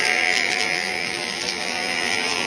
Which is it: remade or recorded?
remade